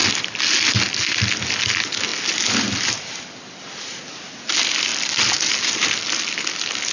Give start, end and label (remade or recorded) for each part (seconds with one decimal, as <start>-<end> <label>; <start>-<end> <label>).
0.0-6.9 recorded